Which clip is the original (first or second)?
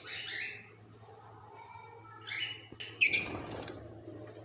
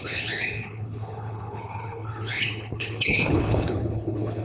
first